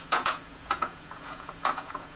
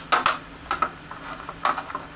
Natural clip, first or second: second